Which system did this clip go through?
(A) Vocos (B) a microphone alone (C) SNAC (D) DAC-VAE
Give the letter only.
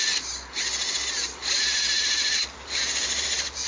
B